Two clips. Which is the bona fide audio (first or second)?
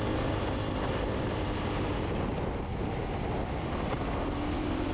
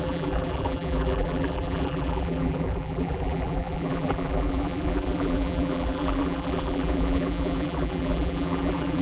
first